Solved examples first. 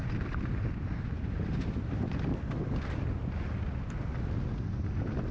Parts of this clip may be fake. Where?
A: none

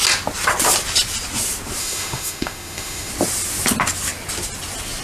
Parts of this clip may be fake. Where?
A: 1.8-3.1 (autoencoder, DAC-VAE)

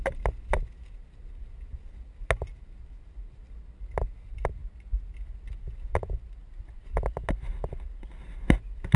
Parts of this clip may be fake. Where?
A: none

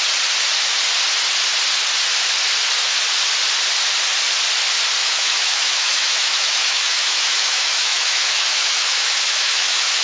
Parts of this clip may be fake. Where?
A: 5.0-10.0 (autoencoder, DAC-VAE)

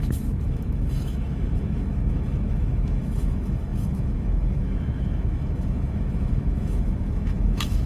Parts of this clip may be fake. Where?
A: 0.0-7.9 (autoencoder, DAC-VAE)

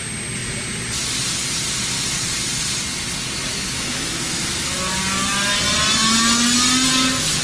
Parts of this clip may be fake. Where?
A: 3.5-4.7 (autoencoder, DAC-VAE)

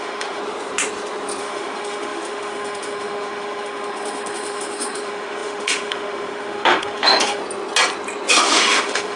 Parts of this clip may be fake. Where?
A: 0.0-0.4 (autoencoder, DAC-VAE); 1.4-7.4; 8.3-9.2

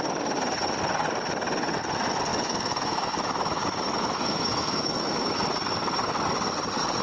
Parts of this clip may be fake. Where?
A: 2.3-5.3 (autoencoder, DAC-VAE)